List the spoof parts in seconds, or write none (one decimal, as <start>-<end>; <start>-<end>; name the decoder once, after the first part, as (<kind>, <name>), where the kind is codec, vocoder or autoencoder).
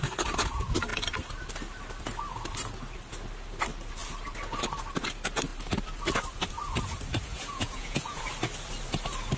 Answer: 7.3-8.2 (vocoder, Vocos)